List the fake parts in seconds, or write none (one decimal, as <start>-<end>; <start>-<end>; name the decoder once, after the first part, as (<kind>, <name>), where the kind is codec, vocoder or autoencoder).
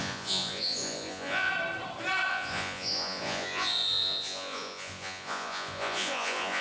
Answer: 0.0-1.5 (vocoder, Vocos); 2.3-6.6